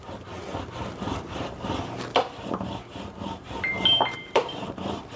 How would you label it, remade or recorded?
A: recorded